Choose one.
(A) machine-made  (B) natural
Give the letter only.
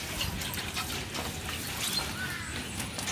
B